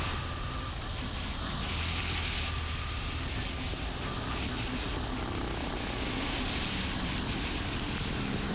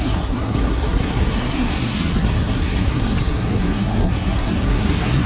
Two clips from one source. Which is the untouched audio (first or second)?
first